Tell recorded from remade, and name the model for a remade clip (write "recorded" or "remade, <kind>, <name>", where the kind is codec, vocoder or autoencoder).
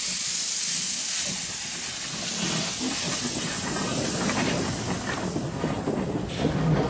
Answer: recorded